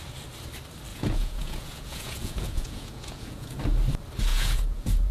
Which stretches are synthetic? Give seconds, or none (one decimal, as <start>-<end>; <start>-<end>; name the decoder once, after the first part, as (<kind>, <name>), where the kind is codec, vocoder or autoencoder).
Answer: 0.9-3.6 (vocoder, Vocos); 4.3-5.1